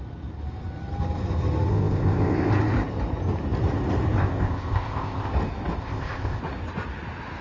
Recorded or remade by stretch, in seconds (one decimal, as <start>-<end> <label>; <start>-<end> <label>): 0.0-1.7 recorded; 1.7-2.5 remade; 2.5-4.2 recorded; 4.2-5.3 remade; 5.3-5.8 recorded; 5.8-6.4 remade; 6.4-7.4 recorded